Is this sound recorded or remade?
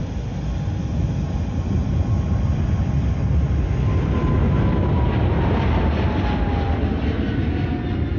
recorded